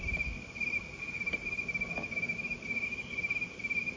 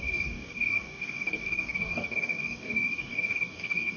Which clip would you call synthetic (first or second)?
second